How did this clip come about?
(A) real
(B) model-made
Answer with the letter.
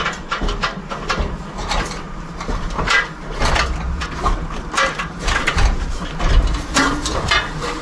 B